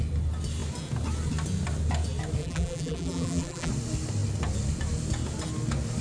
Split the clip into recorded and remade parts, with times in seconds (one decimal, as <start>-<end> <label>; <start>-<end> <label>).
0.0-2.4 recorded; 2.4-3.7 remade; 3.7-6.0 recorded

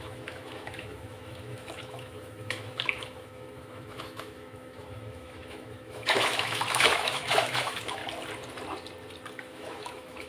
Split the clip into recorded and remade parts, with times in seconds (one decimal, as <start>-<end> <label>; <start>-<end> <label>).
0.0-8.0 remade; 8.0-9.4 recorded; 9.4-10.3 remade